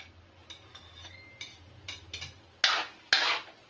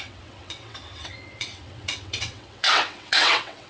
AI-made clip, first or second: second